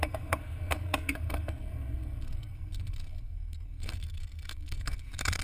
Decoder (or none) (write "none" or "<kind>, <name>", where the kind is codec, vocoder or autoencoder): codec, SNAC